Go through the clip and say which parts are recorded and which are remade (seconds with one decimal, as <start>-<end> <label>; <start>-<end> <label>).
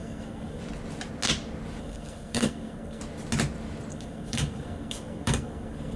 0.0-0.6 remade; 0.6-1.8 recorded; 1.8-3.0 remade; 3.0-3.9 recorded; 3.9-6.0 remade